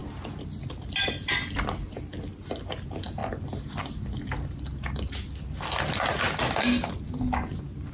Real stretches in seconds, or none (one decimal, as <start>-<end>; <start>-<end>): 0.0-7.9